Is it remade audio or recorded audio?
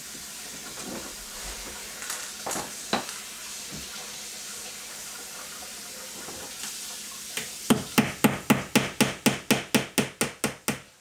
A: recorded